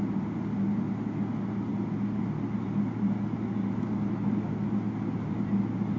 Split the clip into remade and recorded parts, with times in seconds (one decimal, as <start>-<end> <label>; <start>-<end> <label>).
0.0-6.0 recorded